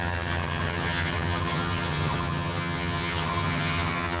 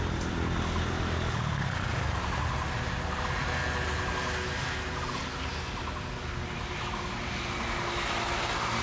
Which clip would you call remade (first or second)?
first